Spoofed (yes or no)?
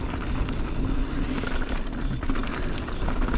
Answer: no